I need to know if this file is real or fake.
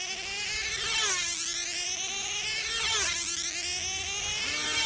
real